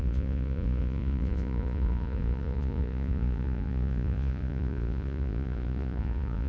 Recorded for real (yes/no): no